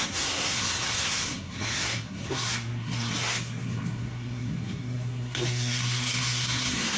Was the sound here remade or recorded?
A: remade